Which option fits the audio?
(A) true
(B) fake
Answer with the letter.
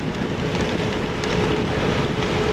A